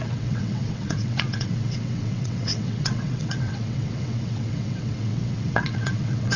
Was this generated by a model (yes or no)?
yes